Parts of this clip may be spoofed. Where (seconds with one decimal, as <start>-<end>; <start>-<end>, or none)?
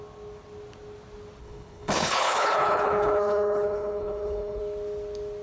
1.4-4.6